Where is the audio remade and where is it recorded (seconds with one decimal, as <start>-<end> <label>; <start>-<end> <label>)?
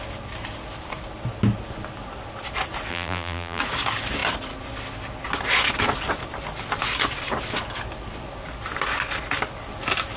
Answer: 0.0-2.9 recorded; 2.9-3.6 remade; 3.6-10.2 recorded